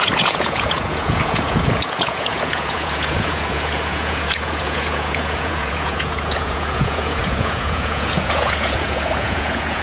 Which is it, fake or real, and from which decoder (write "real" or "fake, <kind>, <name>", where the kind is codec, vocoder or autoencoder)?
fake, vocoder, Vocos